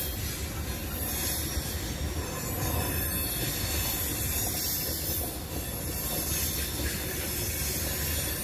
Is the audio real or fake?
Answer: real